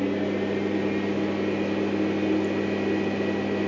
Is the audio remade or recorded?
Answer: recorded